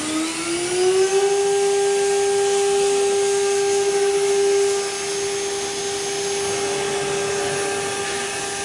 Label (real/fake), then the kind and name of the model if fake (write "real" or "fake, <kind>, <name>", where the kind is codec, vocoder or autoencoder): real